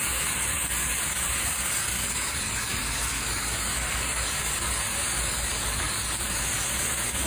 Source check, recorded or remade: remade